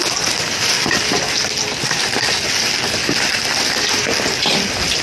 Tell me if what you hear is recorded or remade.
recorded